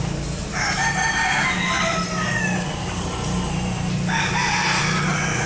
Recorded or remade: recorded